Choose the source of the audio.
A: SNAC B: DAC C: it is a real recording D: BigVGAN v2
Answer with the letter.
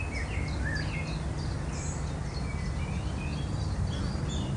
C